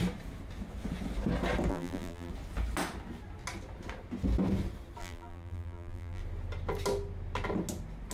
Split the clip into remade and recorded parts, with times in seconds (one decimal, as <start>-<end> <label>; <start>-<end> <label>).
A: 0.0-1.7 recorded; 1.7-2.3 remade; 2.3-5.0 recorded; 5.0-6.2 remade; 6.2-8.1 recorded